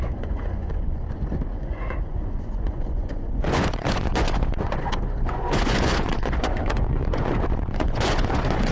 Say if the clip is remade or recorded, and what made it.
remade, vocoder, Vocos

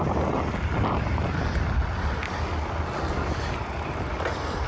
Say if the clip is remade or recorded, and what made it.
recorded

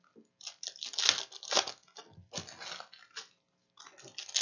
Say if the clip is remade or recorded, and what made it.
recorded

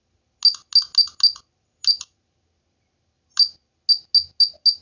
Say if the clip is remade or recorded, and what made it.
recorded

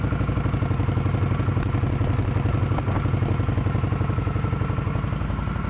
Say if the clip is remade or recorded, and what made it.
recorded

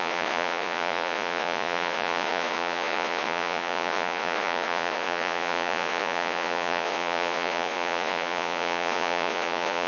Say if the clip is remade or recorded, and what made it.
remade, vocoder, Vocos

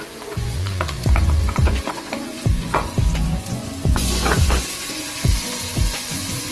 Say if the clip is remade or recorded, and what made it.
remade, vocoder, Vocos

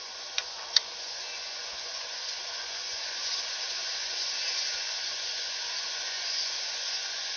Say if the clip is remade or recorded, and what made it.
remade, vocoder, Vocos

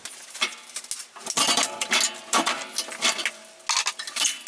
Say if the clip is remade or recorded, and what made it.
recorded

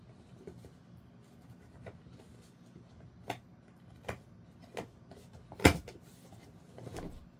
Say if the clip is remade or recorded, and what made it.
recorded